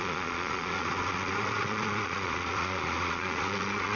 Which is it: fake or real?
fake